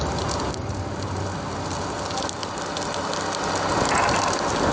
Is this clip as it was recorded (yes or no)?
yes